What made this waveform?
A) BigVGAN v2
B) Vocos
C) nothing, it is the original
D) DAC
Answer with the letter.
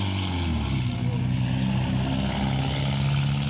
C